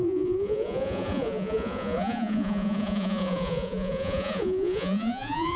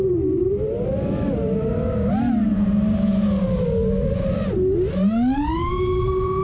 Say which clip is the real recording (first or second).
second